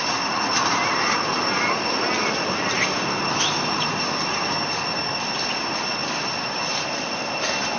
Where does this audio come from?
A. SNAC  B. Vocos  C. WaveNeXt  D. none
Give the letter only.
D